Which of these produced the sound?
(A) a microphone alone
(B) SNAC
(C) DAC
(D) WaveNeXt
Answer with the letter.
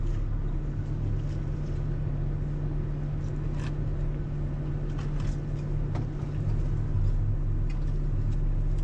A